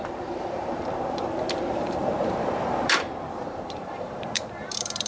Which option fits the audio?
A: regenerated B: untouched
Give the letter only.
A